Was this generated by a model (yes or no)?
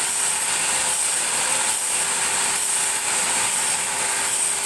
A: no